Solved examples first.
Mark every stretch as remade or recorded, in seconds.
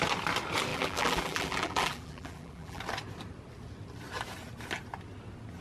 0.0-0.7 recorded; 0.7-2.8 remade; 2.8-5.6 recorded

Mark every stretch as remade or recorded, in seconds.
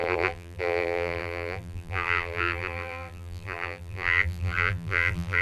0.0-5.4 remade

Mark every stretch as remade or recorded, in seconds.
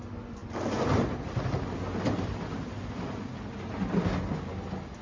0.0-5.0 recorded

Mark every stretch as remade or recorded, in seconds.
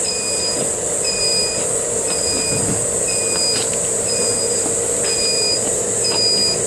0.0-6.7 recorded